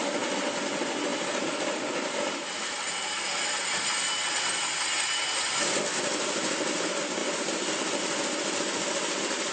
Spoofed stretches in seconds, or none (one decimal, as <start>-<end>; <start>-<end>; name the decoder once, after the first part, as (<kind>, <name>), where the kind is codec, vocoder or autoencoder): none